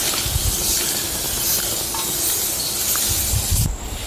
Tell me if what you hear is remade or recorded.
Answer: recorded